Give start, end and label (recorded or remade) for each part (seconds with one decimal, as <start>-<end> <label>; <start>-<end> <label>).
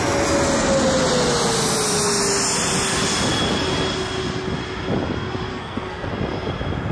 0.0-5.5 recorded; 5.5-6.1 remade; 6.1-6.9 recorded